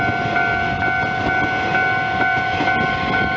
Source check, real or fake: real